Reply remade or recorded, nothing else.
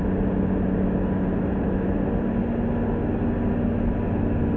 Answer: recorded